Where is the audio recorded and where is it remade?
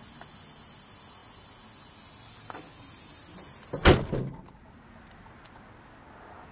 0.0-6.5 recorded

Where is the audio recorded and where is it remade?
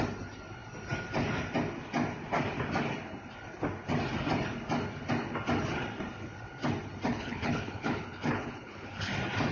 0.0-7.1 recorded; 7.1-9.1 remade; 9.1-9.5 recorded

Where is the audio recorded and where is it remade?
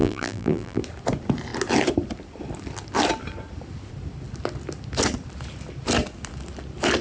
0.0-0.8 remade; 0.8-7.0 recorded